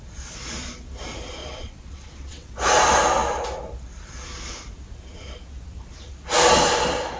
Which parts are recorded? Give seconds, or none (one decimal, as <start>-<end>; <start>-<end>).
0.0-1.4; 2.5-7.2